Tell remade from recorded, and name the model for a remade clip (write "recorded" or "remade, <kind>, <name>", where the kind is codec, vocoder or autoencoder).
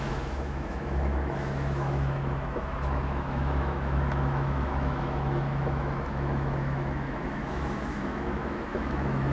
remade, autoencoder, DAC-VAE